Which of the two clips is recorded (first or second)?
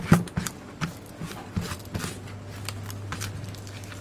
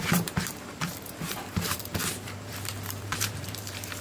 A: first